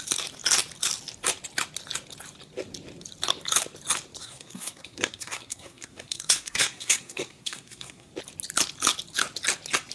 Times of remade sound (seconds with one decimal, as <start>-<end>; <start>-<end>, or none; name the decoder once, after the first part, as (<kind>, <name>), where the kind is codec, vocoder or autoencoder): 4.2-8.1 (codec, SNAC)